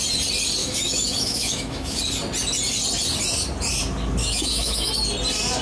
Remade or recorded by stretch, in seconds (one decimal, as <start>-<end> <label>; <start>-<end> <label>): 0.0-0.6 recorded; 0.6-2.0 remade; 2.0-4.2 recorded; 4.2-4.9 remade; 4.9-5.6 recorded